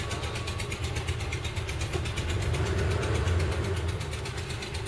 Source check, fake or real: real